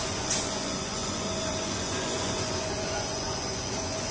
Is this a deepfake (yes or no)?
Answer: yes